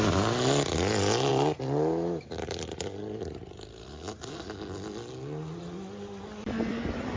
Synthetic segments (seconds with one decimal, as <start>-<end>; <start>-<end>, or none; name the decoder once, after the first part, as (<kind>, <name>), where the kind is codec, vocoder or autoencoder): none